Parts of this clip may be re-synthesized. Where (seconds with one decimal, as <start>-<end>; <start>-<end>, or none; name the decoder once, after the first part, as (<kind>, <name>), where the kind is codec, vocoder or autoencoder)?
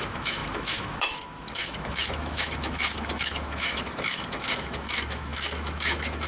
0.0-6.3 (autoencoder, DAC-VAE)